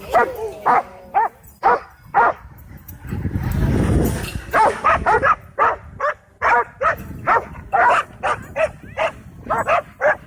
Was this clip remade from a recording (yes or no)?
yes